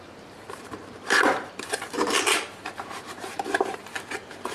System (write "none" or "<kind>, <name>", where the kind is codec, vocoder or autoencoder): vocoder, BigVGAN v2